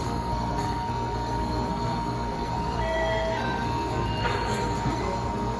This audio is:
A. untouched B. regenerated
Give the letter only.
B